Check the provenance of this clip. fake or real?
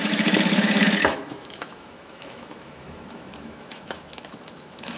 fake